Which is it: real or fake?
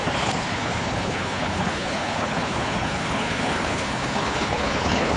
fake